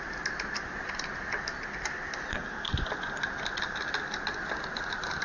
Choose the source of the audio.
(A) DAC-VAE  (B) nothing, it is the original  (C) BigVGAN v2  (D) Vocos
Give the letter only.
C